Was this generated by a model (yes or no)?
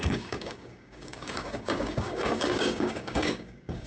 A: yes